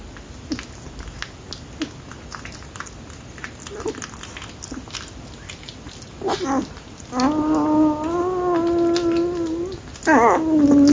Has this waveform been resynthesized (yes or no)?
no